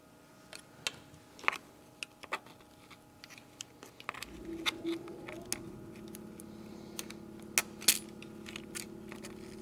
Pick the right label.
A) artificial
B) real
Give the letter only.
B